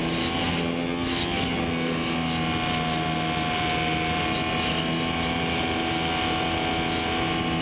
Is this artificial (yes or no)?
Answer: no